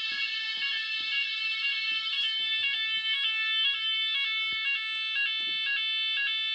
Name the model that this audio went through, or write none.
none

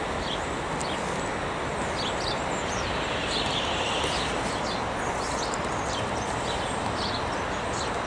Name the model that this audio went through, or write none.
none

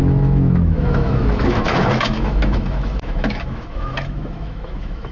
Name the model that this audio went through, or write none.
autoencoder, DAC-VAE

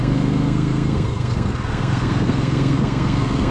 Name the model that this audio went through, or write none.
codec, SNAC